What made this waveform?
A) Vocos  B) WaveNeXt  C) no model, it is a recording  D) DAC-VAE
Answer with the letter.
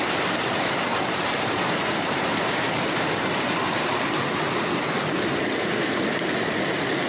C